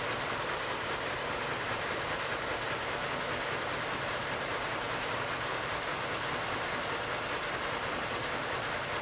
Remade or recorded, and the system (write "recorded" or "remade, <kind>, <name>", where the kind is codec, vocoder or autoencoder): recorded